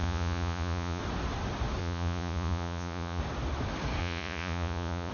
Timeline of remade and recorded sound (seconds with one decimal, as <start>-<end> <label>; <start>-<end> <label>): 0.0-1.0 remade; 1.0-1.8 recorded; 1.8-3.2 remade; 3.2-4.0 recorded; 4.0-5.1 remade